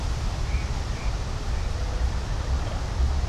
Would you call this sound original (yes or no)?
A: yes